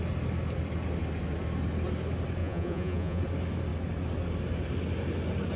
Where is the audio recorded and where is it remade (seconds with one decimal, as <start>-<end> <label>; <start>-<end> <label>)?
0.0-2.4 recorded; 2.4-3.2 remade; 3.2-5.6 recorded